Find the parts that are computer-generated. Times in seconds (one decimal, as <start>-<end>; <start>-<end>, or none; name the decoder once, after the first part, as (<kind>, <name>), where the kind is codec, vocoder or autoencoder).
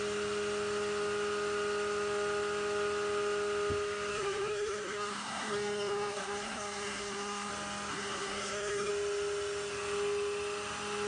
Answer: 4.1-7.5 (codec, SNAC); 7.9-8.9